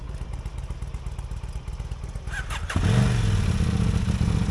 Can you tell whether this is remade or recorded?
recorded